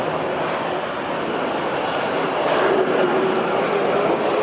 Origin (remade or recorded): recorded